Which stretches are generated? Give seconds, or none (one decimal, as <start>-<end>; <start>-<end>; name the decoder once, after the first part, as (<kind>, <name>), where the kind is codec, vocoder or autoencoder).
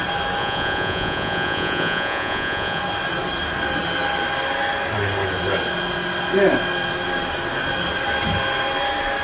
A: 0.4-2.8 (vocoder, Vocos)